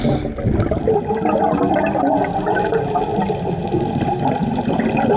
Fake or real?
real